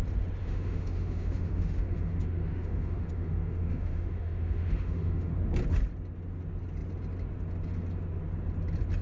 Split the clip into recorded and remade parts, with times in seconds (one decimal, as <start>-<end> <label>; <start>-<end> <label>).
0.0-0.4 recorded; 0.4-5.3 remade; 5.3-9.0 recorded